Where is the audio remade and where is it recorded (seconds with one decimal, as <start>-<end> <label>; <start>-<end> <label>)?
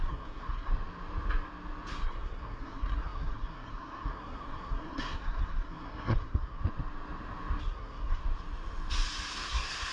0.0-0.7 remade; 0.7-1.9 recorded; 1.9-6.6 remade; 6.6-7.6 recorded; 7.6-8.2 remade; 8.2-9.3 recorded; 9.3-9.9 remade